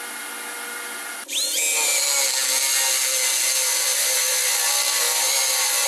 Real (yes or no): yes